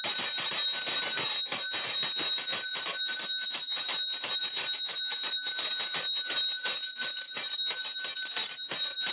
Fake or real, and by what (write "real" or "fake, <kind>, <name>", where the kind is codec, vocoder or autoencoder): real